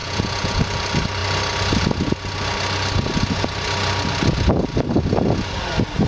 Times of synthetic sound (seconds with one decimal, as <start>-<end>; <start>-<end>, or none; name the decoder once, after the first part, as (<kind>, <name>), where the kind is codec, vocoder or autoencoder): 0.0-0.6 (vocoder, Vocos)